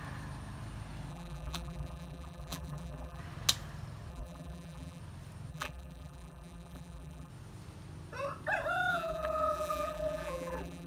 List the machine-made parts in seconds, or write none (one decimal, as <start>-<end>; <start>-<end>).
1.1-3.2; 4.1-5.0; 5.5-7.3; 8.9-10.9